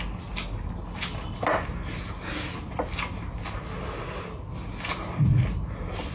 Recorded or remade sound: recorded